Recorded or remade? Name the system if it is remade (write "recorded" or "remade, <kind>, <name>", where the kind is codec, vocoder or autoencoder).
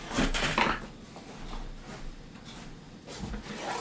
recorded